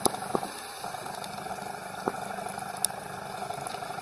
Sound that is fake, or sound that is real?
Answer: real